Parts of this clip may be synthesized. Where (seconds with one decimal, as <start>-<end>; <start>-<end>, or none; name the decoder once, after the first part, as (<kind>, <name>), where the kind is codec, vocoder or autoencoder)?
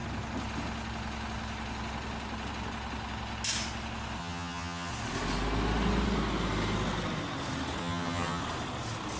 4.2-4.9 (vocoder, HiFi-GAN); 7.8-8.4